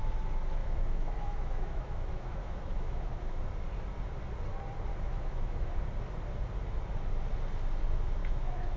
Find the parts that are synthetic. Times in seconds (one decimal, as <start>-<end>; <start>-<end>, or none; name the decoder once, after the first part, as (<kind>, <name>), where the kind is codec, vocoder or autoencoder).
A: 0.6-3.4 (autoencoder, DAC-VAE); 4.9-5.8; 8.2-8.8